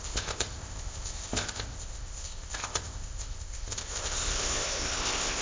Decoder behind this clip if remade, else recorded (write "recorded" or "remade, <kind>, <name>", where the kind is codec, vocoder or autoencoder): remade, codec, ZipCodec